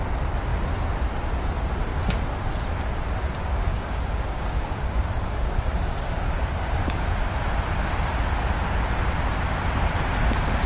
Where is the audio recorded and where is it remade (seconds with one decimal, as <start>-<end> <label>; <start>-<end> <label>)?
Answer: 0.0-1.9 recorded; 1.9-2.5 remade; 2.5-3.2 recorded; 3.2-7.1 remade; 7.1-10.7 recorded